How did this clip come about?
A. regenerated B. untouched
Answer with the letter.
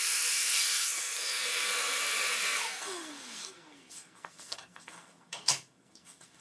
A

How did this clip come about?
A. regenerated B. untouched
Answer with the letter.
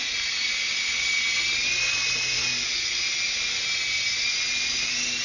B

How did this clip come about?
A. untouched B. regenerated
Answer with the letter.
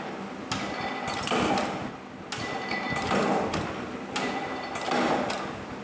A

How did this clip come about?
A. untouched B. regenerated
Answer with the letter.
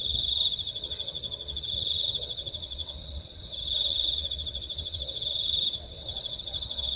B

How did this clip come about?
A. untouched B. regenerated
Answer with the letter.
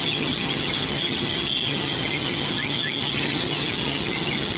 B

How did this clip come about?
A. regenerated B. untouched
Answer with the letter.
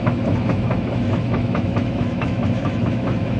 A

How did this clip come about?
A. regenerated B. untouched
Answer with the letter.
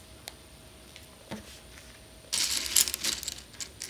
B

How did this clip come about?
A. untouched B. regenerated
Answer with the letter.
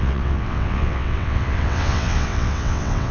B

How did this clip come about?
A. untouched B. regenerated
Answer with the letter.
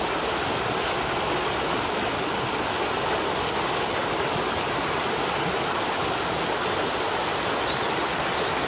A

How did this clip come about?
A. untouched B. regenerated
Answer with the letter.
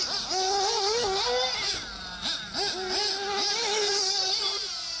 A